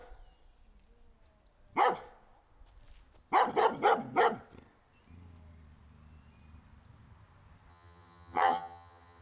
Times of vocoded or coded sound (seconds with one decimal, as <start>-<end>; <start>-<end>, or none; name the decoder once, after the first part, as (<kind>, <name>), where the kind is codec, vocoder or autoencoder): 7.7-9.2 (vocoder, HiFi-GAN)